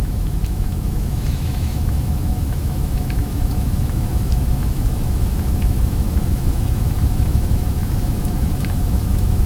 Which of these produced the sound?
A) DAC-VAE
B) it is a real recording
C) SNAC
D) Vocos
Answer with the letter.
A